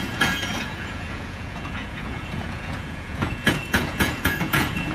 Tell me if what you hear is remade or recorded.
remade